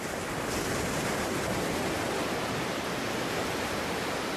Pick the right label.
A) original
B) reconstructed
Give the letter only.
A